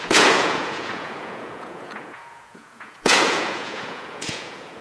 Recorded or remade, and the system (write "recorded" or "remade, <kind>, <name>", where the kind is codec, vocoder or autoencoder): remade, vocoder, Vocos